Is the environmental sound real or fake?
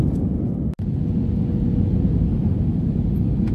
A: real